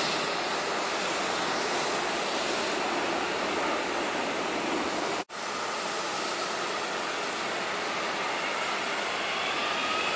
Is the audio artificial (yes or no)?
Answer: no